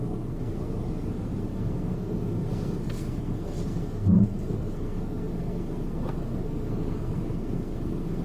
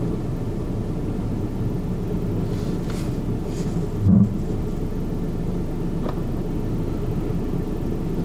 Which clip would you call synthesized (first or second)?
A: first